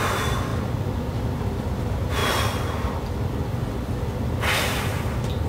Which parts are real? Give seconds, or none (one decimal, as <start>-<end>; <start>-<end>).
0.0-5.5